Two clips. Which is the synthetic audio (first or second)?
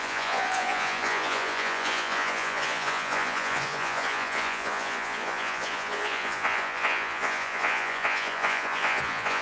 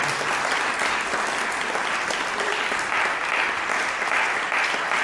first